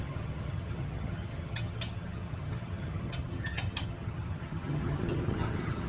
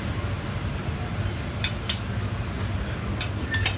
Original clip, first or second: second